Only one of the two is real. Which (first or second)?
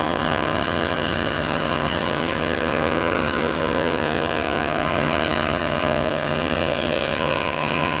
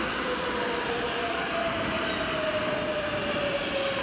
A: second